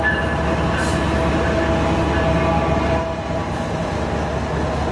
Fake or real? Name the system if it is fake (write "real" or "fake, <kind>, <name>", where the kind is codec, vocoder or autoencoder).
real